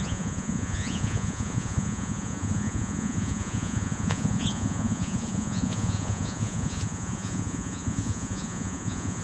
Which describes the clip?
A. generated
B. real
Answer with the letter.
A